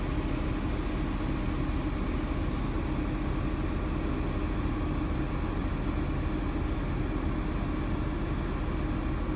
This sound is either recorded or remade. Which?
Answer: recorded